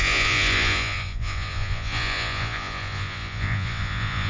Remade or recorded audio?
remade